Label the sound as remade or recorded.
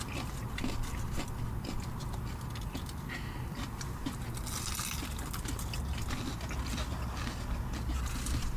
recorded